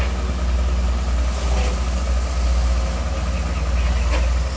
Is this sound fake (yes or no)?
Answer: no